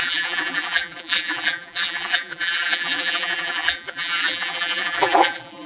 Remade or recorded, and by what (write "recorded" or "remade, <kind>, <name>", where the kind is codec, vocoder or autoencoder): remade, vocoder, BigVGAN v2